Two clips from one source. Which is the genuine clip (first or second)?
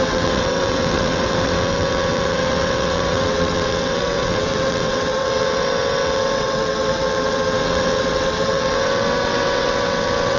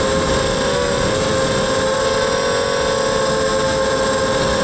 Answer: second